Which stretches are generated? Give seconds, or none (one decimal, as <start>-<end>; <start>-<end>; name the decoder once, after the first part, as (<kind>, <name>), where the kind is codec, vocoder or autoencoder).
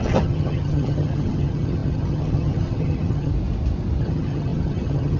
0.0-3.3 (vocoder, HiFi-GAN); 4.0-5.2